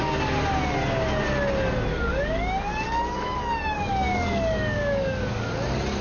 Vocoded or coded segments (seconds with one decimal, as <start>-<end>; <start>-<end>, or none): 1.9-5.5